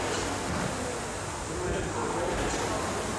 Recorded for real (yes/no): yes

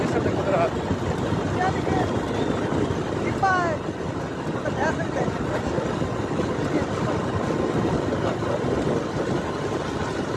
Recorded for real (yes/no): yes